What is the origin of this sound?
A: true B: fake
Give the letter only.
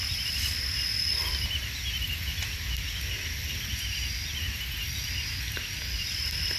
A